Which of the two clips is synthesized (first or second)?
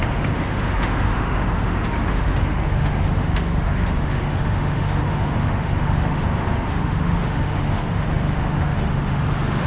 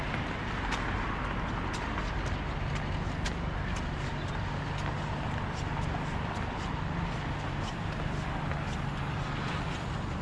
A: first